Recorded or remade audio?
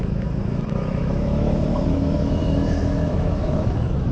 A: remade